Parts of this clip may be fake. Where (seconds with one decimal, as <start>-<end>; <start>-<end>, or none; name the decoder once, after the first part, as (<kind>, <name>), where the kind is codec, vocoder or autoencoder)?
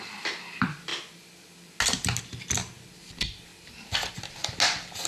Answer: none